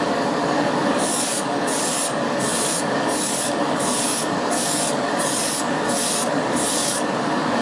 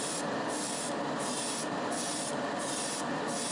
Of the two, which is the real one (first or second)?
second